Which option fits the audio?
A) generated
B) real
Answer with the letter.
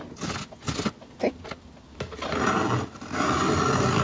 B